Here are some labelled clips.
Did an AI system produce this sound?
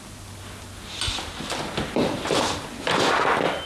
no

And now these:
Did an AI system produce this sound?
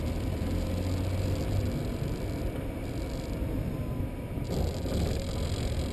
no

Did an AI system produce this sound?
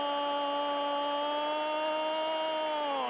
no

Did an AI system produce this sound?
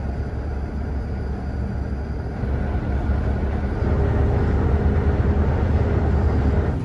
no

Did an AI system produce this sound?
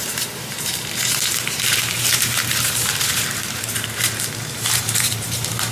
yes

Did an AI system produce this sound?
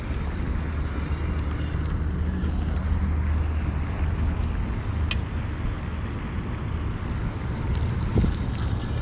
no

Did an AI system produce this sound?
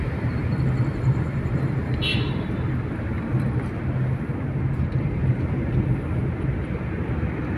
no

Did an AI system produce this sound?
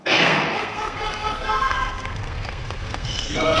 yes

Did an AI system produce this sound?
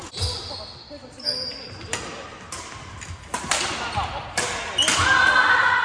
no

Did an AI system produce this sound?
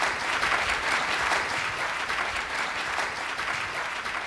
yes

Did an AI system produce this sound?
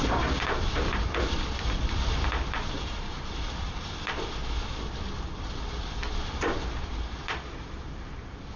yes